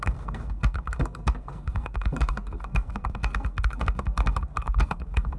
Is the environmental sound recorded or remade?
remade